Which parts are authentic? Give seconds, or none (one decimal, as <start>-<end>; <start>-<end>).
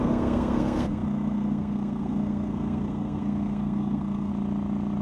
4.3-5.0